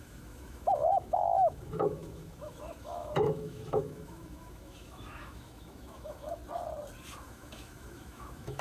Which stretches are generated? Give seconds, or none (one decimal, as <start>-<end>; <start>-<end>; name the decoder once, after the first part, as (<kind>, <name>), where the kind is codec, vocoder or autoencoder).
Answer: 0.0-6.4 (autoencoder, DAC-VAE); 7.2-8.6